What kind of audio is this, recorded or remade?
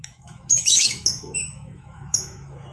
remade